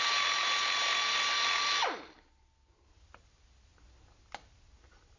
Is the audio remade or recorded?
recorded